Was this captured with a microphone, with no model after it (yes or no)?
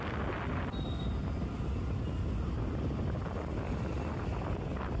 yes